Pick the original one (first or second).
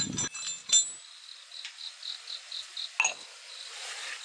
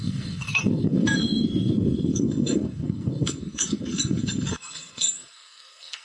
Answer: first